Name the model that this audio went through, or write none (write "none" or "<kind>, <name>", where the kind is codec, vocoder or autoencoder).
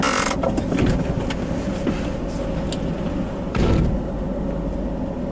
none